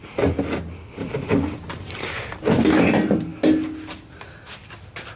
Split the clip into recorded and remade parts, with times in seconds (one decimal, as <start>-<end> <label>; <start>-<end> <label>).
0.0-5.2 recorded

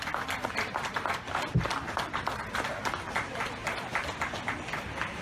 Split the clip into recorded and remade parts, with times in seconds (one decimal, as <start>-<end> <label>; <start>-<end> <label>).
0.0-3.6 recorded; 3.6-5.2 remade

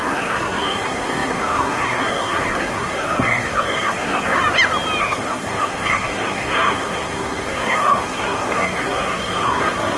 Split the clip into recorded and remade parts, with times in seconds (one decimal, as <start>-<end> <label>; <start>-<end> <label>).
0.0-4.4 remade; 4.4-5.0 recorded; 5.0-10.0 remade

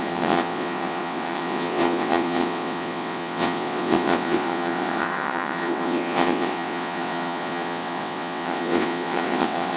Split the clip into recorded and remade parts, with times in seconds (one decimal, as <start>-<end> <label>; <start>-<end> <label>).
0.0-9.8 remade

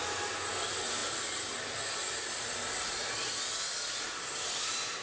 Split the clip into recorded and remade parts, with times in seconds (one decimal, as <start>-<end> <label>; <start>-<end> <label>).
0.0-5.0 recorded